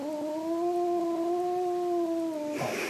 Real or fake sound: real